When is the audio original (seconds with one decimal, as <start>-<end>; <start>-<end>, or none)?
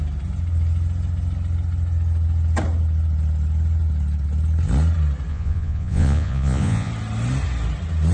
0.0-5.3; 6.9-8.1